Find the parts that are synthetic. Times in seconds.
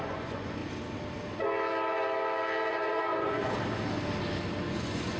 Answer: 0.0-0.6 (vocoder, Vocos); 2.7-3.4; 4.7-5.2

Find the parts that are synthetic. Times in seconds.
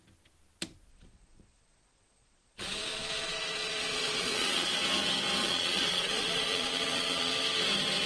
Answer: 0.9-4.7 (vocoder, Vocos); 5.4-7.3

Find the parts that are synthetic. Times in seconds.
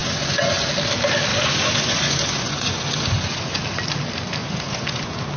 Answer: 0.0-0.7 (vocoder, Vocos); 1.3-3.6; 4.4-5.0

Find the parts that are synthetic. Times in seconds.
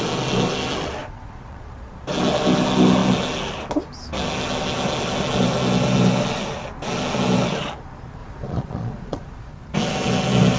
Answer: 1.0-1.9 (vocoder, Vocos); 8.2-9.5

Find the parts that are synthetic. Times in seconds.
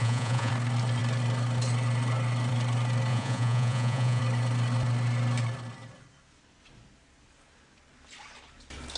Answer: 0.0-0.5 (vocoder, Vocos); 3.1-4.2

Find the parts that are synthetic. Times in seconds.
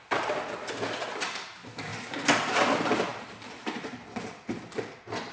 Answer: none